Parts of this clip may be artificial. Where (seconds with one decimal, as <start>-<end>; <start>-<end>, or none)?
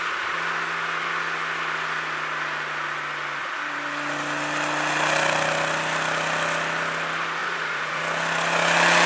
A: 7.4-8.0